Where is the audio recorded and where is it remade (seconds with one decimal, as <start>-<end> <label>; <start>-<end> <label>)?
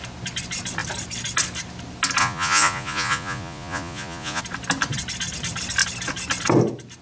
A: 0.0-2.2 recorded; 2.2-4.4 remade; 4.4-7.0 recorded